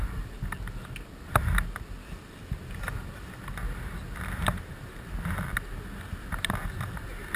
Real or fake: real